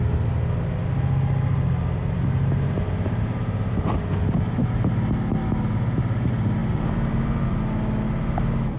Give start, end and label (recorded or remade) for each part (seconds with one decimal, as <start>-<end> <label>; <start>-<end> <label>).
0.0-6.6 recorded; 6.6-7.6 remade; 7.6-8.8 recorded